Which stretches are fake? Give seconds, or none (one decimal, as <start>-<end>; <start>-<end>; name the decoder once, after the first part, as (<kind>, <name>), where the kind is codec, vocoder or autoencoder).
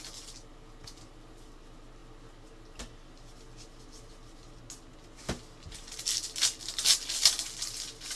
none